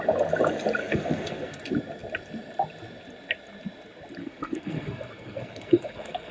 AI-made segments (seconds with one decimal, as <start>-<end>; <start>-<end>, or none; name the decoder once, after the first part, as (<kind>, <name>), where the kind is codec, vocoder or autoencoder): 0.8-1.6 (codec, SNAC); 4.2-6.3